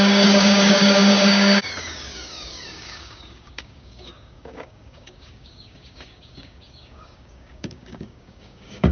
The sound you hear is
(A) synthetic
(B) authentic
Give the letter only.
A